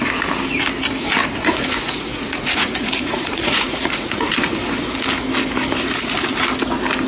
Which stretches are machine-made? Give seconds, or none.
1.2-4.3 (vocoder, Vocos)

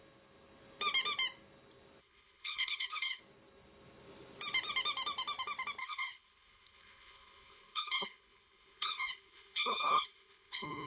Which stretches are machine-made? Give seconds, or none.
2.0-3.2 (codec, HILCodec); 5.8-10.9

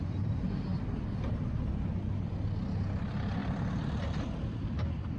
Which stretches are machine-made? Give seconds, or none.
3.4-5.2 (vocoder, BigVGAN v2)